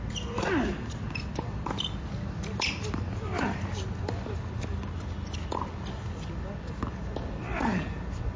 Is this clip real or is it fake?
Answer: real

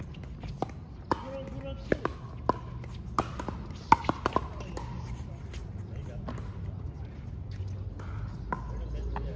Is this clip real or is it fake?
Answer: real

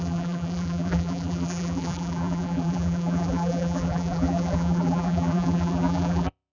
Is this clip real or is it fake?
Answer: fake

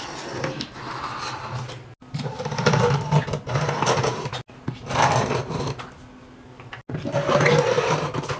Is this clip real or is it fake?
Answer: real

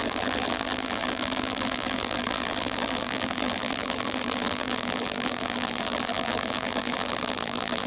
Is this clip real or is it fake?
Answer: fake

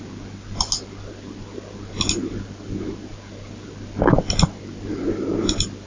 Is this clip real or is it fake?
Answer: real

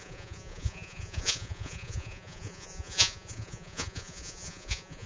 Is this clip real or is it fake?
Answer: fake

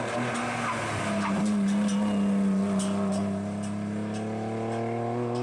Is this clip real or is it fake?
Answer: real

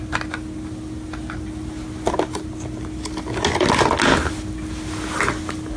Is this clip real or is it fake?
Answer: real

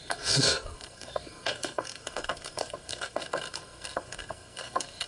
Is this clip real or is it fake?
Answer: fake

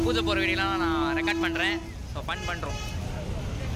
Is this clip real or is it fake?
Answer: real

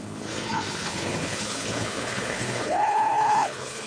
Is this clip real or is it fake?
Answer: fake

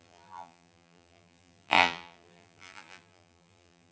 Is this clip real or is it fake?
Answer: fake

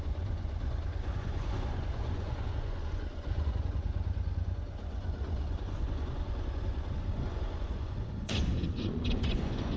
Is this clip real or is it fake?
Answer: fake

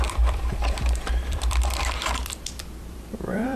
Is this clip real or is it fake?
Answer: fake